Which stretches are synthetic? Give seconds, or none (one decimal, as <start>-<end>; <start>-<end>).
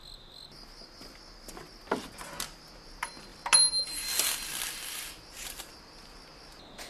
none